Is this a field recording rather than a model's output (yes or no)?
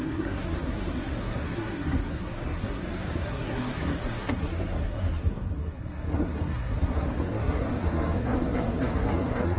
no